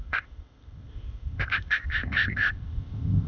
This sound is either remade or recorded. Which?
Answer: remade